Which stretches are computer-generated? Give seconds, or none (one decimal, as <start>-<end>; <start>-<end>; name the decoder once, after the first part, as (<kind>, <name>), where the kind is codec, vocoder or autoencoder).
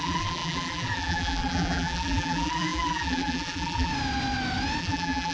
0.0-3.9 (vocoder, BigVGAN v2); 4.8-5.3